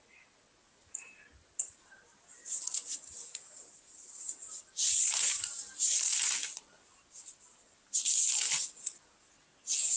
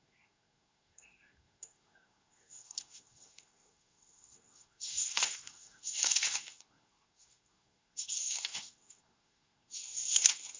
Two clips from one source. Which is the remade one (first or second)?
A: second